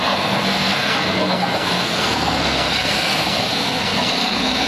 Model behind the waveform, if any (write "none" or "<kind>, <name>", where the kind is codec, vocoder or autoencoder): codec, SNAC